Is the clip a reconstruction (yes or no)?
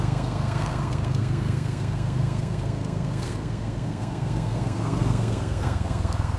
yes